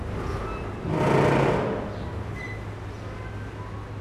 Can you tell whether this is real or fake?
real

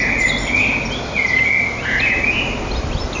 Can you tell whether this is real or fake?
real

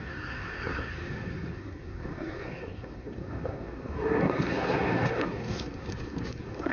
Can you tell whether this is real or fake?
fake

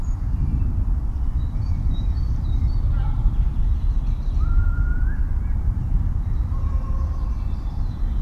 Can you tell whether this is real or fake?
fake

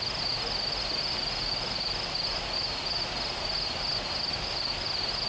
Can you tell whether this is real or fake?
real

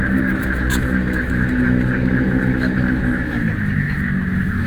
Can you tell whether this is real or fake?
fake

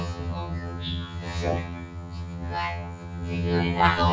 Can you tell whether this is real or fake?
fake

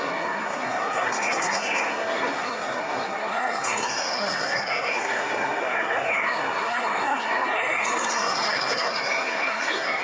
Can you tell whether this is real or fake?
fake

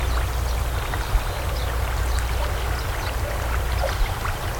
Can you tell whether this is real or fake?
real